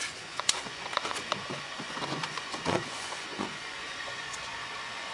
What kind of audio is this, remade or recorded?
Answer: remade